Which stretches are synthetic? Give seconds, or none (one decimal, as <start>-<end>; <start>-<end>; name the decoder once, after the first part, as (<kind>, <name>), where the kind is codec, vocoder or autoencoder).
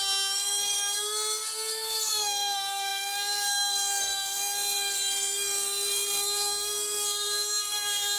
0.0-8.2 (codec, SNAC)